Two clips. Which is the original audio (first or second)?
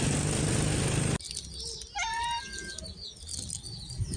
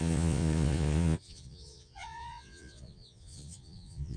first